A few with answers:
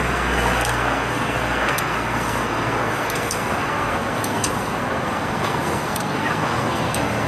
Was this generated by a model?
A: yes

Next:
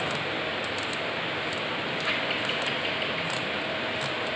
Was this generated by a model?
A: no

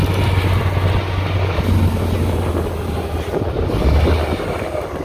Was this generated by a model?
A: no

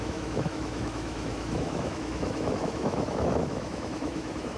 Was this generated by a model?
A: yes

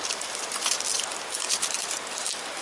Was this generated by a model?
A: yes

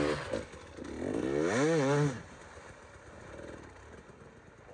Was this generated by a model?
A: no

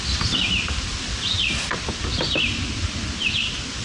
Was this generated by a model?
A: no